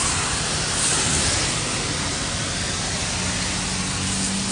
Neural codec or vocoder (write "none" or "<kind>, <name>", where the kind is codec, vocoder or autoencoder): none